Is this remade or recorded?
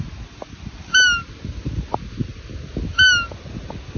recorded